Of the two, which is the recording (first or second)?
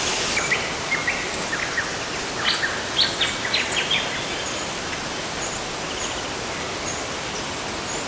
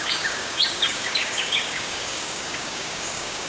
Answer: first